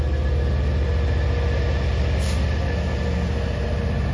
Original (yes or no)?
yes